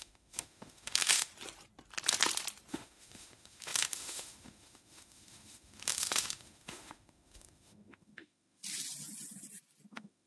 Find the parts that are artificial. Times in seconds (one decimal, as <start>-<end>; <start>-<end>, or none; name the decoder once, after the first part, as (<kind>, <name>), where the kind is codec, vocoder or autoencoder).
0.0-1.3 (autoencoder, DAC-VAE); 2.7-8.6; 9.9-10.3